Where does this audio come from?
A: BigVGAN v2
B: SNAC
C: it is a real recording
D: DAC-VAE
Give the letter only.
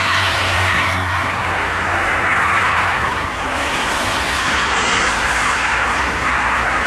B